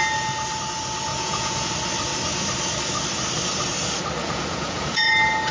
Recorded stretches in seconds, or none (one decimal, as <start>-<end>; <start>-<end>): 0.0-1.1; 1.7-4.2; 5.1-5.5